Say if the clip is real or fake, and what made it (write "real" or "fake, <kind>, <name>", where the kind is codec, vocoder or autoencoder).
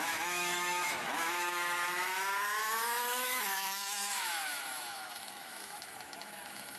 fake, autoencoder, DAC-VAE